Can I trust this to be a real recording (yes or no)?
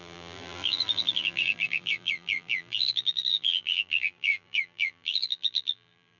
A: no